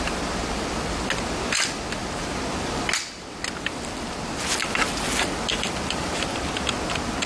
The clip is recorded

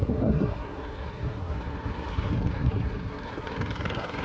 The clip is remade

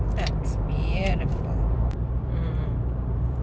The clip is remade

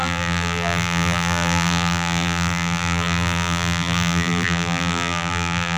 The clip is remade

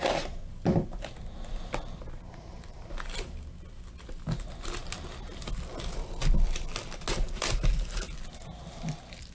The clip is recorded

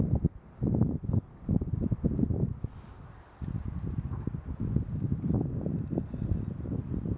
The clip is recorded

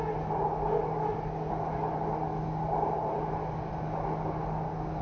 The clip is recorded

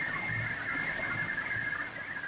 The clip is recorded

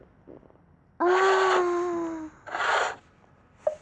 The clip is recorded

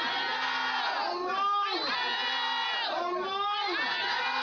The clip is recorded